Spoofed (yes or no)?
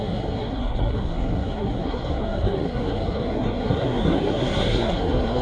yes